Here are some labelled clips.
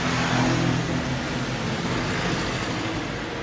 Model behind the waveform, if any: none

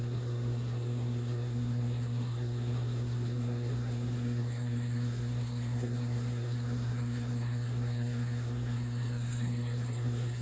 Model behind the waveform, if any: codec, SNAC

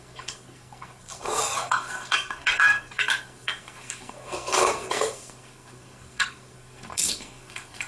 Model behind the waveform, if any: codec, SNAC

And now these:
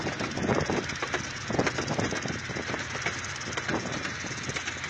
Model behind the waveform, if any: none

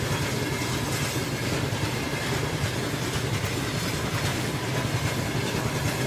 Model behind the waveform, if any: none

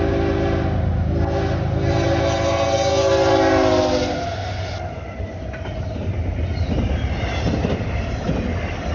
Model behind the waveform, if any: none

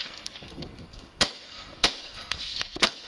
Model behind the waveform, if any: codec, SNAC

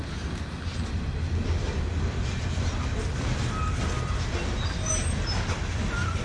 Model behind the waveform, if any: none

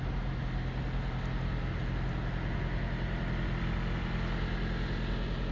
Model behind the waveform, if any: none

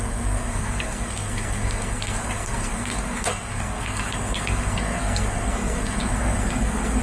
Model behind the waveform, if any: codec, SNAC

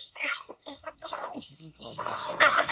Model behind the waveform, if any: codec, SNAC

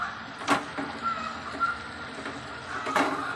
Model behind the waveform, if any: none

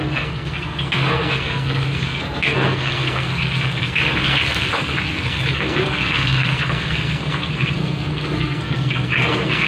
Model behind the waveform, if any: codec, SNAC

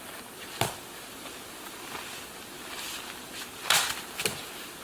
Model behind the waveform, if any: none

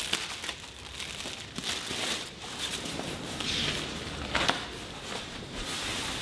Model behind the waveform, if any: none